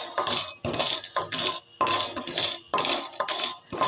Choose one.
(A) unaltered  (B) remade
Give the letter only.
A